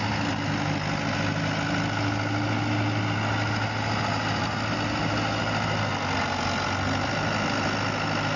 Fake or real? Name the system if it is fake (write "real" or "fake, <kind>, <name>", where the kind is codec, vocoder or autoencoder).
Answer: real